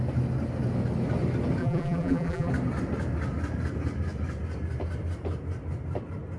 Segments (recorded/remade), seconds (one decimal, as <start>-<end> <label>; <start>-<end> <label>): 0.0-1.6 recorded; 1.6-2.5 remade; 2.5-6.4 recorded

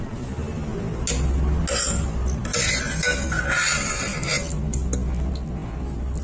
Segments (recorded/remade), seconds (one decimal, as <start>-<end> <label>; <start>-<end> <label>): 0.0-6.2 recorded